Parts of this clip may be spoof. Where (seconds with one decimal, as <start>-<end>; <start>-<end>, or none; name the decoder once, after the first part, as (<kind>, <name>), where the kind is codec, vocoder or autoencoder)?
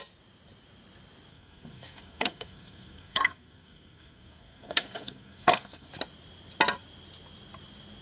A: 1.3-5.9 (codec, SNAC)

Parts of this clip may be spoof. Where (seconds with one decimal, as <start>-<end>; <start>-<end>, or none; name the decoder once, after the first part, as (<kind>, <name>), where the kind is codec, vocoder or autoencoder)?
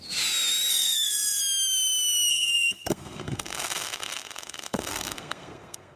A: 0.7-1.4 (codec, SNAC); 2.3-6.0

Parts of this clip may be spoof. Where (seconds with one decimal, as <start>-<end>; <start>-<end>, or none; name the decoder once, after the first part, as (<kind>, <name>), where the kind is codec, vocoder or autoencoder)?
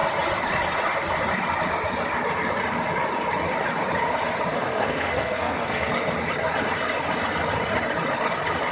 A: 4.5-5.9 (codec, SNAC)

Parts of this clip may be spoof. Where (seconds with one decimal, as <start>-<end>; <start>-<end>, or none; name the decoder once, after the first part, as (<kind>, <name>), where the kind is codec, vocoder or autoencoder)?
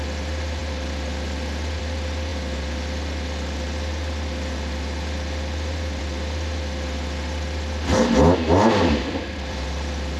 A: none